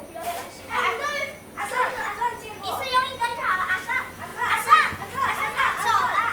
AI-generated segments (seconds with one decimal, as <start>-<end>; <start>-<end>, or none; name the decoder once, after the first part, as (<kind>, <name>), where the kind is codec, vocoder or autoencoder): 3.3-3.9 (autoencoder, DAC-VAE)